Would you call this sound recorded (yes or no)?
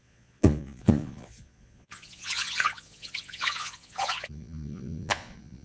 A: no